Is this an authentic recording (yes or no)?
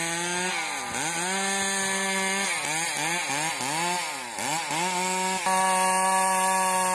yes